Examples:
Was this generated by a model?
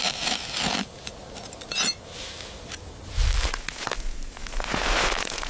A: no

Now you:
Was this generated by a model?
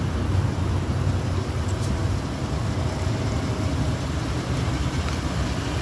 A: no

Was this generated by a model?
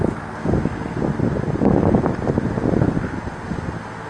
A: no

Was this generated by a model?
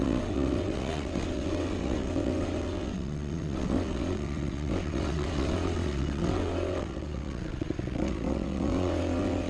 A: yes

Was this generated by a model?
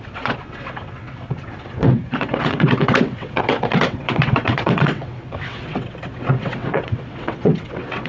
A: yes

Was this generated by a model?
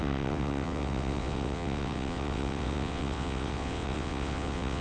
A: yes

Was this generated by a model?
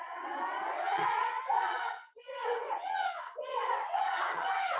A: yes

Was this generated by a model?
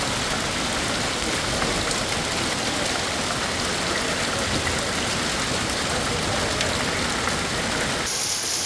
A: no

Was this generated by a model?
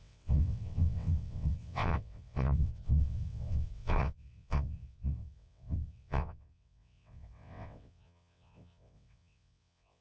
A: yes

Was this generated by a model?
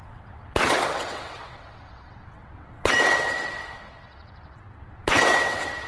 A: yes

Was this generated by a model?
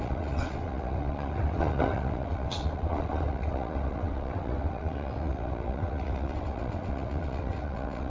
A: yes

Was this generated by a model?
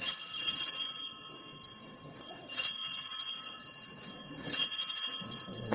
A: yes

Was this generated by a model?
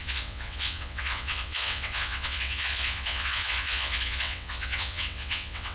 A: yes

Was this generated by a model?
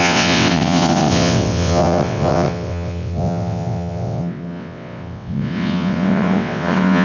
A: yes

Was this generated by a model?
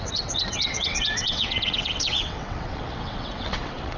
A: yes